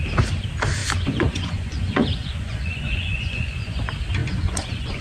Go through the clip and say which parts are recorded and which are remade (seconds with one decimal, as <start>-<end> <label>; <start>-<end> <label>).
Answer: 0.0-0.8 recorded; 0.8-3.8 remade; 3.8-4.2 recorded; 4.2-5.0 remade